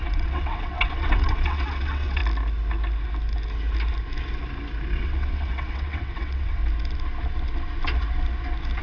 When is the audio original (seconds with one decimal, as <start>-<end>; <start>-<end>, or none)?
2.2-4.9; 6.6-8.8

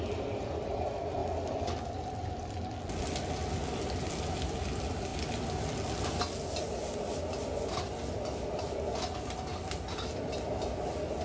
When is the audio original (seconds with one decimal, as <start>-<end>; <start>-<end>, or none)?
0.0-11.2

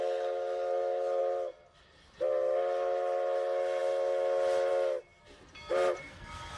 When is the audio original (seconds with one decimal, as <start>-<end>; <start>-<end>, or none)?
0.0-6.0